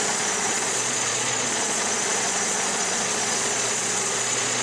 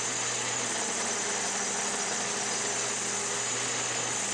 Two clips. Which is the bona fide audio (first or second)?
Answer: second